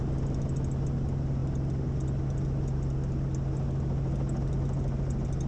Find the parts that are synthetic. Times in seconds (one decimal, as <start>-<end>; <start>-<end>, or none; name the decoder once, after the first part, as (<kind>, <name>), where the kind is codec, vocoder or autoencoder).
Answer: none